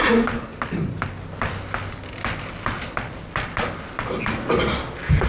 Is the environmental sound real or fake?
real